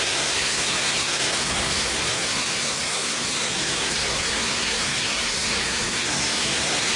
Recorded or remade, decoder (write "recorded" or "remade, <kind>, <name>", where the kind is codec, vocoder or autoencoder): remade, codec, SNAC